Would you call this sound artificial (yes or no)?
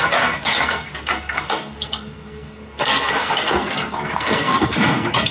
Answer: yes